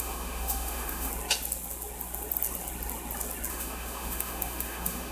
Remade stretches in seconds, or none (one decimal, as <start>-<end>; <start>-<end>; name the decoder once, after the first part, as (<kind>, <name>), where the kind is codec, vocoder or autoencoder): 0.0-1.1 (autoencoder, DAC-VAE); 3.5-5.1